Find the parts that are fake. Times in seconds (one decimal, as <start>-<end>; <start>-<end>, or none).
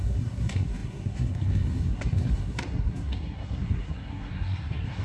0.0-5.0